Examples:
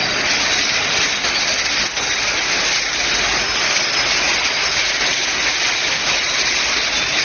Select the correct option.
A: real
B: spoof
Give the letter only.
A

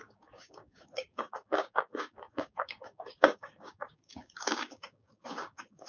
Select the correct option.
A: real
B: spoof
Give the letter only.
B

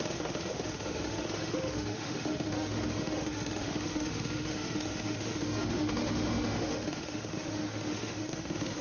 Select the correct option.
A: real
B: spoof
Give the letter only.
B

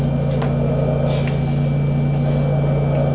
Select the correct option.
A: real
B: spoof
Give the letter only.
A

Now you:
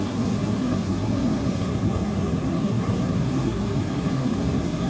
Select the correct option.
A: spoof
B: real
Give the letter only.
A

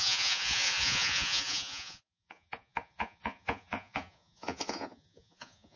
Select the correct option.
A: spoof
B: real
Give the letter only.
A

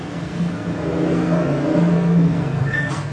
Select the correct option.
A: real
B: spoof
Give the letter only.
B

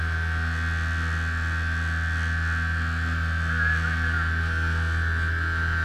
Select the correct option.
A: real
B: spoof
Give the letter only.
A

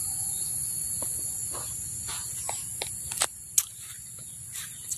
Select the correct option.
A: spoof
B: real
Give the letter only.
B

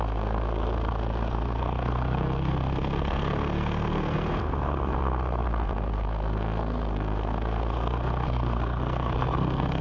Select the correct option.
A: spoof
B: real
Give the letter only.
A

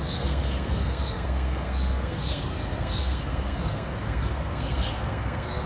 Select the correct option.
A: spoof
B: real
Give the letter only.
A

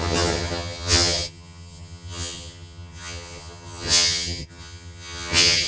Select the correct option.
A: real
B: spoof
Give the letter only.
B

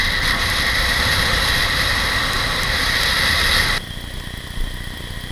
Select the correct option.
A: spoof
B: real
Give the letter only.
A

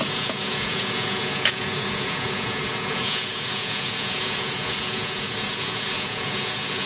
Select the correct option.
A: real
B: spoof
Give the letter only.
B